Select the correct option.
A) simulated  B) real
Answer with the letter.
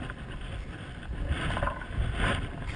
B